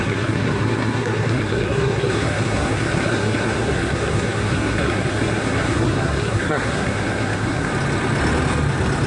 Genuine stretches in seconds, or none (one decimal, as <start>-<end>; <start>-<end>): 7.7-9.1

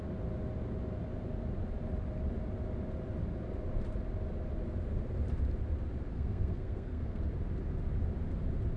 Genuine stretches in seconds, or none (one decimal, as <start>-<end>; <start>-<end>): 0.0-6.1; 7.2-8.8

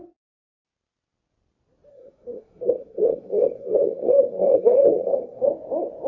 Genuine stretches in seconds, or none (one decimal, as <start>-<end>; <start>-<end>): 0.0-1.9; 5.5-6.1

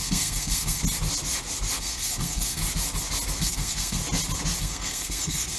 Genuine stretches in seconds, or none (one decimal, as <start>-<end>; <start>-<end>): 0.8-1.8; 2.6-3.4; 4.0-4.6